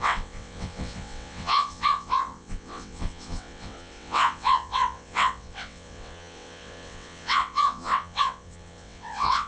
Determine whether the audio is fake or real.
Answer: fake